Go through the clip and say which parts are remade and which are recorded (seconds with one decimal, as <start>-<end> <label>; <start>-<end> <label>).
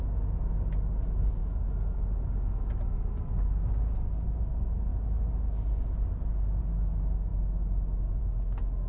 0.0-8.9 recorded